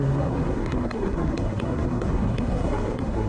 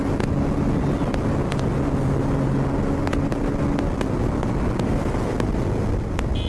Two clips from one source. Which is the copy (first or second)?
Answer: first